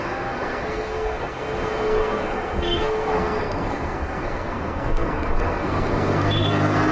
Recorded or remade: remade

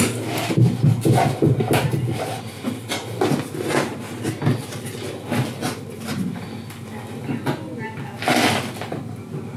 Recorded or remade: recorded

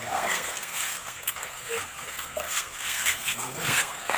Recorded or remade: remade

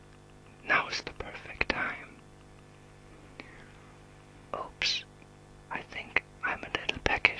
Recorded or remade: recorded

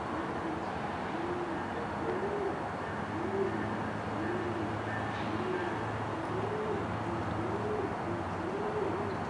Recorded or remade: recorded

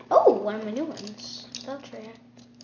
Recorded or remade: recorded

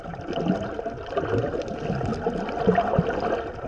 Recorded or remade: recorded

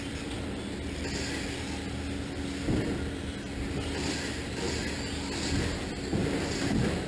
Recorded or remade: recorded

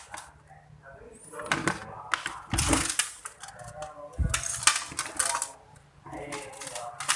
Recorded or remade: recorded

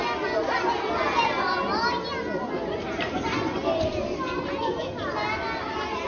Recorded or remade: recorded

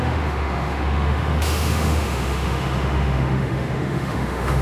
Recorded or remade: remade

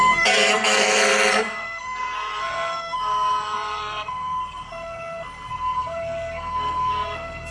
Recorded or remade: remade